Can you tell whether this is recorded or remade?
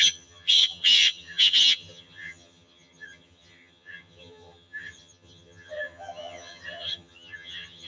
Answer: remade